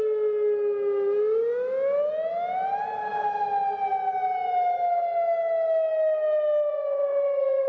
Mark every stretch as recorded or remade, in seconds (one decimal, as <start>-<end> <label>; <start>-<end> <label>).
0.0-6.7 recorded; 6.7-7.7 remade